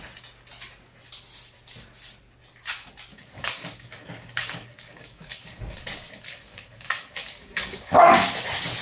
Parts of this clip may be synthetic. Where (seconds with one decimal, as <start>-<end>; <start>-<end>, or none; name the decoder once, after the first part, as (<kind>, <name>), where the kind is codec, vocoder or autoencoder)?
3.1-8.1 (codec, DAC)